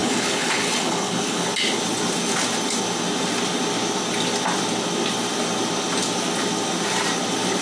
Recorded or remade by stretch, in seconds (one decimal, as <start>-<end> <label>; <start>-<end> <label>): 0.0-1.5 remade; 1.5-7.6 recorded

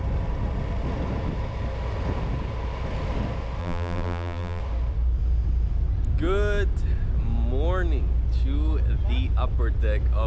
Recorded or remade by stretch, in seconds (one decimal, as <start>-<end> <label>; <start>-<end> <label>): 0.0-3.6 recorded; 3.6-4.6 remade; 4.6-10.3 recorded

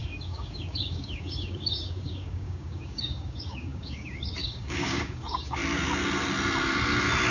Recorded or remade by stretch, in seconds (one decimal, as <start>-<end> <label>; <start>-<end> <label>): 0.0-5.6 remade; 5.6-7.3 recorded

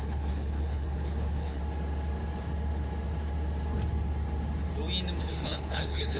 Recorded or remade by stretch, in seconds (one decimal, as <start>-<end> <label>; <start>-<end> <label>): 0.0-1.6 remade; 1.6-5.2 recorded; 5.2-6.2 remade

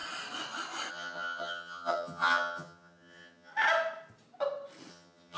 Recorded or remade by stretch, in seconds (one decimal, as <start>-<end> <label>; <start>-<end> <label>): 0.0-0.9 recorded; 0.9-3.5 remade; 3.5-4.9 recorded; 4.9-5.4 remade

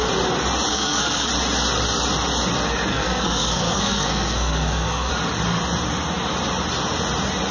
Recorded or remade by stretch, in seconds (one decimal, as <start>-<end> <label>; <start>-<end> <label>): 0.0-0.7 recorded; 0.7-1.3 remade; 1.3-2.9 recorded; 2.9-5.1 remade; 5.1-7.5 recorded

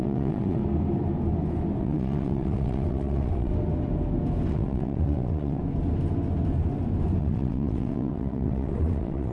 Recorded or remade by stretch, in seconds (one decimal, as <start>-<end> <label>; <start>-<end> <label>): 0.0-0.6 remade; 0.6-1.8 recorded; 1.8-3.5 remade; 3.5-4.5 recorded; 4.5-5.6 remade; 5.6-7.2 recorded; 7.2-9.3 remade

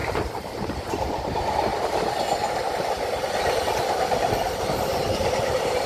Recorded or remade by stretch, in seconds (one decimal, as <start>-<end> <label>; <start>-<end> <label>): 0.0-1.7 remade; 1.7-2.6 recorded; 2.6-5.9 remade